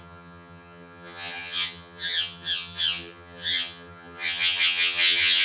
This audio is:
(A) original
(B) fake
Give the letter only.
B